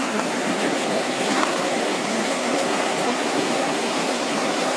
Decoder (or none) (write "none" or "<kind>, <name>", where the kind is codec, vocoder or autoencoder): codec, SNAC